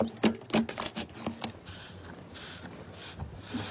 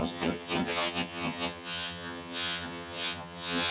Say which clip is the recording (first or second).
first